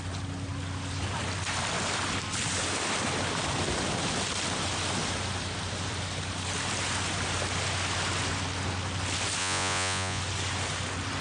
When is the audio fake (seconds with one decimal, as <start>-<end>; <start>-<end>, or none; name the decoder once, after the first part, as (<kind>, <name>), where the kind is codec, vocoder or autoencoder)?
9.4-10.2 (vocoder, Vocos)